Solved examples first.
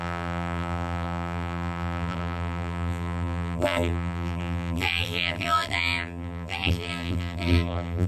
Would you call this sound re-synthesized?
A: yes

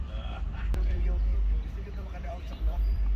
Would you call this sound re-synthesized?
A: yes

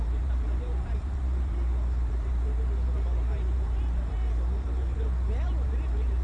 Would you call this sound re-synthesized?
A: yes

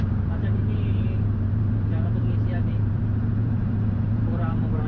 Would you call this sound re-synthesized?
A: yes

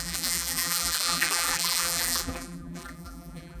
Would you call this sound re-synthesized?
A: yes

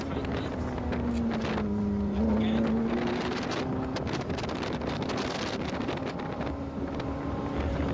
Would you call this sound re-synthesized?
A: no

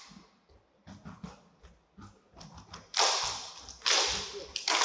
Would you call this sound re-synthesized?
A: no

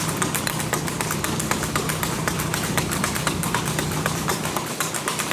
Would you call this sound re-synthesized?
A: yes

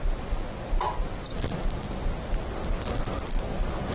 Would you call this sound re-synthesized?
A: no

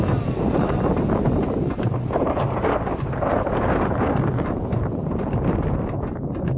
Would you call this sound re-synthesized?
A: yes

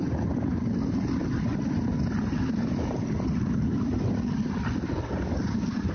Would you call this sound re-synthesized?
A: no